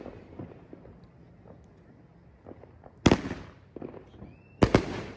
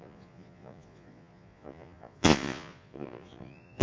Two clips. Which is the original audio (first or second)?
first